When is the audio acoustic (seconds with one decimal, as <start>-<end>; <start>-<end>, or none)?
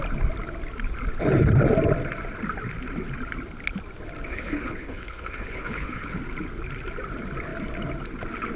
0.0-4.3; 6.2-8.6